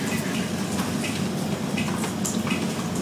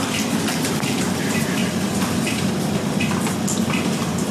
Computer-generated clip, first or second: second